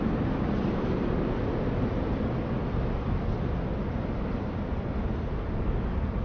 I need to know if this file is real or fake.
real